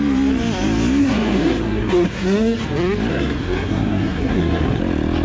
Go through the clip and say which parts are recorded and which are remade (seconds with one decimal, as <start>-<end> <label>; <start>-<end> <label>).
0.0-1.0 recorded; 1.0-2.6 remade; 2.6-3.1 recorded; 3.1-4.8 remade; 4.8-5.2 recorded